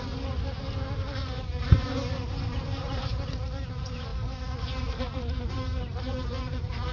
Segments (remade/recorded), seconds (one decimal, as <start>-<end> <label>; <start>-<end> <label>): 0.0-3.1 remade; 3.1-3.6 recorded; 3.6-4.1 remade; 4.1-4.8 recorded; 4.8-6.9 remade